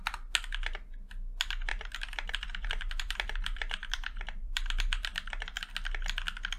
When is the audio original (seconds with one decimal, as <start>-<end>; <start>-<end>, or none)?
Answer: 0.0-1.7; 5.7-6.6

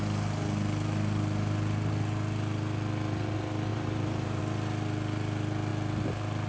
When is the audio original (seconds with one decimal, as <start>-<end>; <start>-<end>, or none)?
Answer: 0.0-3.7; 4.4-6.5

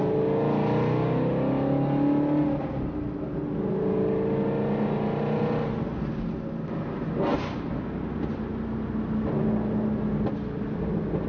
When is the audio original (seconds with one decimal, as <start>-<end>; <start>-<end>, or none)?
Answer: 0.0-11.3

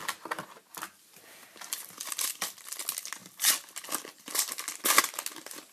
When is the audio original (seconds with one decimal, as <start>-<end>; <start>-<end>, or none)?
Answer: 0.0-1.4; 2.8-5.7

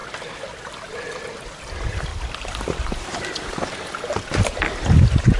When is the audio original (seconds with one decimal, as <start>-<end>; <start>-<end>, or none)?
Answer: 0.0-0.9; 2.1-5.4

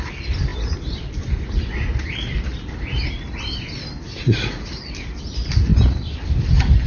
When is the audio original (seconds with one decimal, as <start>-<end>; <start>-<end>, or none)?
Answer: none